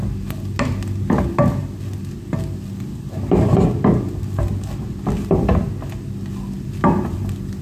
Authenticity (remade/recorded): recorded